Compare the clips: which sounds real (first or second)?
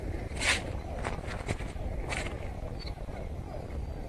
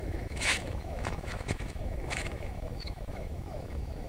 first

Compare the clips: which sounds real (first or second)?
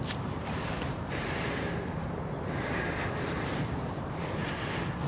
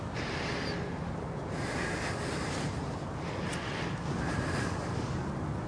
second